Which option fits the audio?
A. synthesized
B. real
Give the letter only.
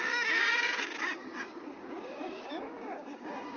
A